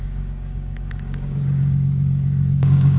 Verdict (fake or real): fake